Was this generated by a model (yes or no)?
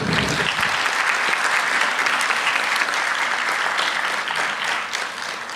no